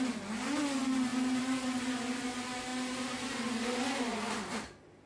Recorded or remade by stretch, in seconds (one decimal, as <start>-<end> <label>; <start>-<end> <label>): 0.0-5.1 recorded